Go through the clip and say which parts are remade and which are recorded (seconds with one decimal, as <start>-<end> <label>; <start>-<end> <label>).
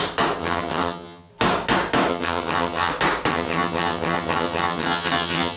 0.0-0.4 recorded; 0.4-1.3 remade; 1.3-2.1 recorded; 2.1-2.9 remade; 2.9-3.3 recorded; 3.3-5.6 remade